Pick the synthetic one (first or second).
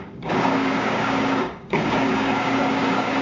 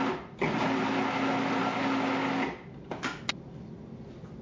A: first